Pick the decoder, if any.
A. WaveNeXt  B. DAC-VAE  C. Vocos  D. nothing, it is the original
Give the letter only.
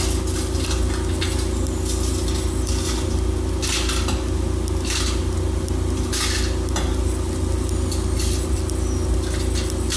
D